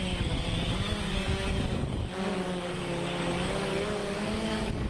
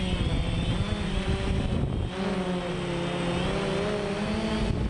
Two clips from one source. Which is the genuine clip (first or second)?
second